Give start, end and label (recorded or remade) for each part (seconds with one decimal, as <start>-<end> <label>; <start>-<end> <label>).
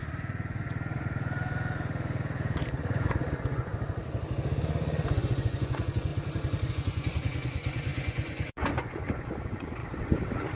0.0-3.7 remade; 3.7-4.6 recorded; 4.6-6.1 remade; 6.1-6.7 recorded; 6.7-9.8 remade; 9.8-10.6 recorded